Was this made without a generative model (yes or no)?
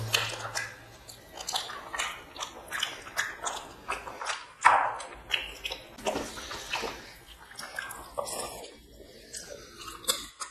yes